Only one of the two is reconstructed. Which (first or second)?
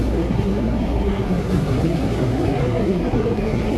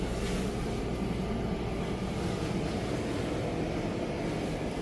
first